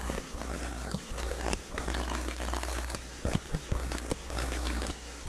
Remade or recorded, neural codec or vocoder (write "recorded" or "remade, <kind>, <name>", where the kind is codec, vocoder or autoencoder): remade, codec, SNAC